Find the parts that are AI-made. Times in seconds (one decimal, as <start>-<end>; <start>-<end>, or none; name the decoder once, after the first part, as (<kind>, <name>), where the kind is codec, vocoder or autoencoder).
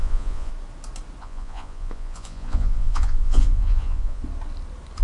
0.0-0.5 (vocoder, Vocos); 1.2-4.2